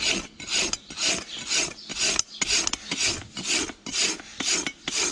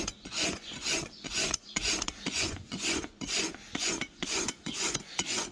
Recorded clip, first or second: first